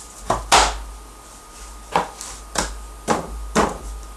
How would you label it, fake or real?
real